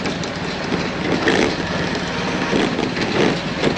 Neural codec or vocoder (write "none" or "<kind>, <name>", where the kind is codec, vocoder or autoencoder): none